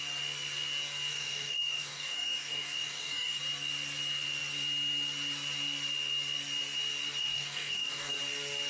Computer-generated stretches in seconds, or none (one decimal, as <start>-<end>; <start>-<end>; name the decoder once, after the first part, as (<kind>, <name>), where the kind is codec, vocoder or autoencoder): 1.1-3.4 (codec, DAC); 7.2-8.2